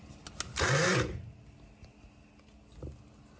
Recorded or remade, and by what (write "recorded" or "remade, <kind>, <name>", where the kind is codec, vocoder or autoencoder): recorded